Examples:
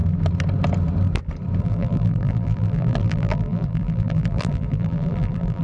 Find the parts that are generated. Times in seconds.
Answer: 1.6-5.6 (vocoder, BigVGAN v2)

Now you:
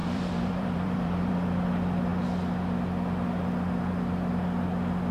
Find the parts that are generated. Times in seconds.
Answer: 0.0-1.3 (vocoder, BigVGAN v2)

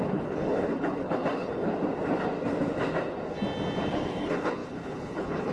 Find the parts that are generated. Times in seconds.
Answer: 0.0-1.7 (codec, HILCodec); 3.9-5.5

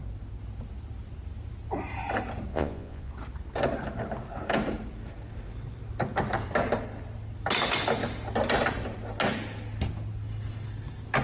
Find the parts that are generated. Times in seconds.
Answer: 2.5-3.1 (vocoder, Vocos)

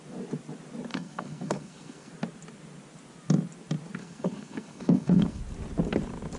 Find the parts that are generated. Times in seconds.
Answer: 0.9-2.1 (codec, SNAC); 4.0-5.4

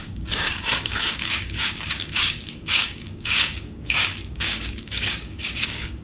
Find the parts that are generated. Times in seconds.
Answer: 0.0-6.0 (codec, DAC)